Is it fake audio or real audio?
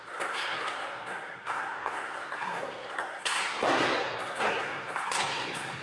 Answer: fake